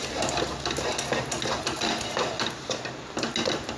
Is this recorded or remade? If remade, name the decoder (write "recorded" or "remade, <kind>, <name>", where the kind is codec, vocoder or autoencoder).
recorded